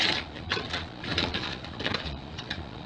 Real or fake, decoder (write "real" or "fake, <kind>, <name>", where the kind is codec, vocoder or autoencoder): fake, vocoder, Vocos